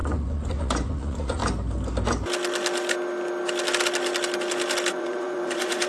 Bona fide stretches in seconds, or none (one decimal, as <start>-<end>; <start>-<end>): 1.4-4.9